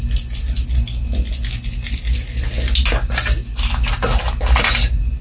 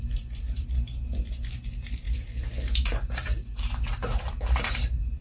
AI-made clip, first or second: second